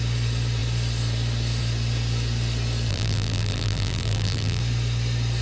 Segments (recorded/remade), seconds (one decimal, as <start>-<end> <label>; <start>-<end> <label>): 0.0-2.9 recorded; 2.9-4.6 remade; 4.6-5.4 recorded